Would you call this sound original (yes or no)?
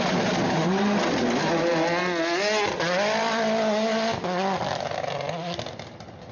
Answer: yes